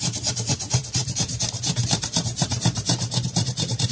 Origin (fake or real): fake